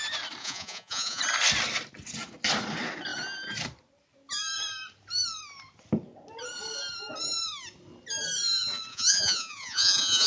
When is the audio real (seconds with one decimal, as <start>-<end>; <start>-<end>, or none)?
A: 0.0-0.4; 1.2-8.9